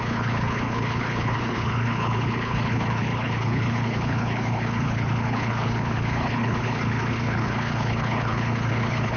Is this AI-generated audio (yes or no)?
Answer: yes